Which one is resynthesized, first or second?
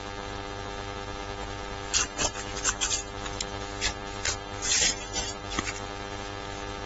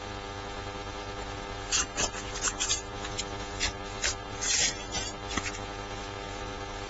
second